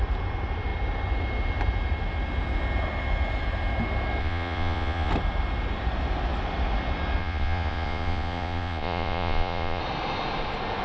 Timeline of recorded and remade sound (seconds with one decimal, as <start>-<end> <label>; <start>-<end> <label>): 0.0-4.2 recorded; 4.2-5.1 remade; 5.1-7.2 recorded; 7.2-9.8 remade; 9.8-10.8 recorded